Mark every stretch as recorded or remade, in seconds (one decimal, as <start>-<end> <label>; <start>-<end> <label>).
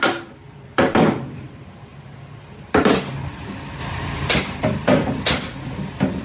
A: 0.0-6.2 remade